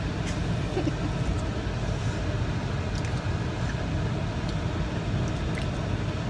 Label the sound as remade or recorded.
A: recorded